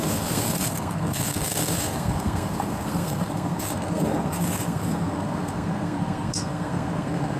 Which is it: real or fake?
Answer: fake